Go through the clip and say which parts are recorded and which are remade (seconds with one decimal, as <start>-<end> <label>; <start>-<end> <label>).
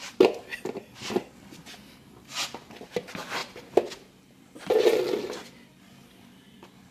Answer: 0.0-6.9 recorded